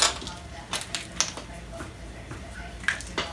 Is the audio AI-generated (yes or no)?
no